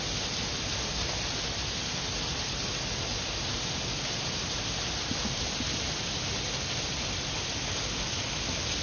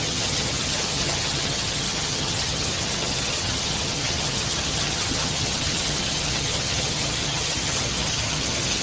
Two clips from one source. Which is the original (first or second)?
first